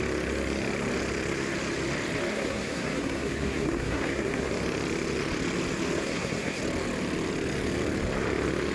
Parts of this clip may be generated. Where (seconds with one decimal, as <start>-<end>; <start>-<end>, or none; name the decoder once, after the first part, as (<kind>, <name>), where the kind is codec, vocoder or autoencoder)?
2.3-4.5 (codec, SNAC); 6.0-6.6